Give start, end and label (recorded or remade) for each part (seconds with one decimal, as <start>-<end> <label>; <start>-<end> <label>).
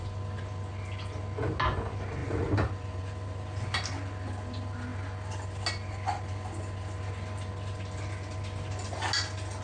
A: 0.0-2.2 recorded; 2.2-3.0 remade; 3.0-9.6 recorded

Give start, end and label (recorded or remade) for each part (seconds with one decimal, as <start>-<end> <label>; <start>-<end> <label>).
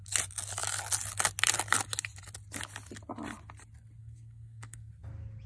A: 0.0-4.0 recorded; 4.0-4.9 remade; 4.9-5.5 recorded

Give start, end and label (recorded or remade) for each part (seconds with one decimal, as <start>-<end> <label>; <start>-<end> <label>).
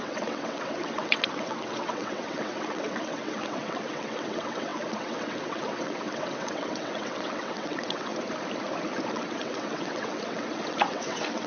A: 0.0-8.1 remade; 8.1-9.1 recorded; 9.1-11.5 remade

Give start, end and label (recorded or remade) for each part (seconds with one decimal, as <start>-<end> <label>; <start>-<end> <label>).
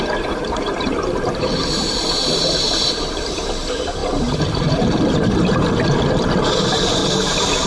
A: 0.0-7.0 remade; 7.0-7.7 recorded